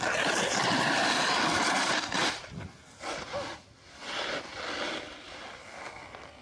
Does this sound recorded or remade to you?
recorded